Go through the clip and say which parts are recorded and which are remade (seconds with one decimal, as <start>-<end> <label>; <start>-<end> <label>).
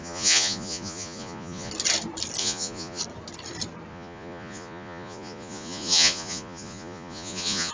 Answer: 0.0-1.7 remade; 1.7-2.4 recorded; 2.4-3.0 remade; 3.0-3.9 recorded; 3.9-7.7 remade